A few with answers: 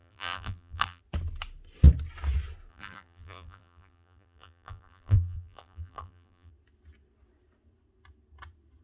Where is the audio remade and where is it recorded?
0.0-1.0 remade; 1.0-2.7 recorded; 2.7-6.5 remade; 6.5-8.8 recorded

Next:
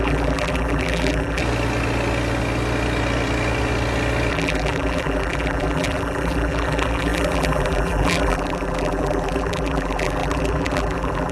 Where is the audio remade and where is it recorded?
0.0-1.4 remade; 1.4-4.3 recorded; 4.3-11.3 remade

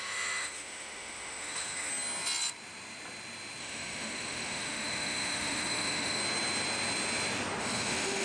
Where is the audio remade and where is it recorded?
0.0-1.9 remade; 1.9-3.6 recorded; 3.6-6.2 remade; 6.2-7.6 recorded; 7.6-8.2 remade

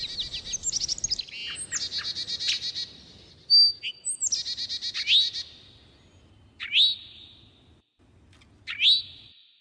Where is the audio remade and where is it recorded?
0.0-9.6 recorded

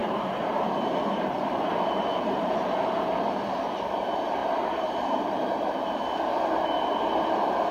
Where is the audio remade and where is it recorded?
0.0-4.0 remade; 4.0-4.4 recorded; 4.4-6.2 remade; 6.2-7.7 recorded

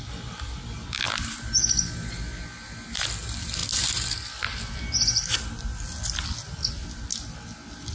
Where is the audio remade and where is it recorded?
0.0-7.9 recorded